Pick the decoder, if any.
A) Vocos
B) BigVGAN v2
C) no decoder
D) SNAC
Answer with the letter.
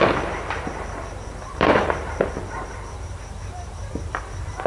B